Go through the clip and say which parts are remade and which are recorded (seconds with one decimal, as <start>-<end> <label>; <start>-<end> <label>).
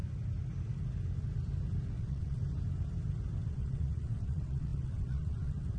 0.0-2.0 recorded; 2.0-2.4 remade; 2.4-3.5 recorded; 3.5-5.8 remade